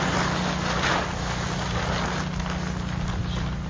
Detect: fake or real real